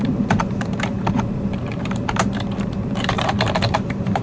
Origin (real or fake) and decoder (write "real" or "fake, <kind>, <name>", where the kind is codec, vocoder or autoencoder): fake, vocoder, BigVGAN v2